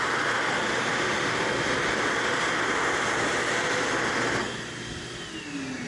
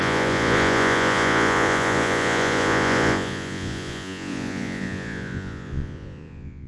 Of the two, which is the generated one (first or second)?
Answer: second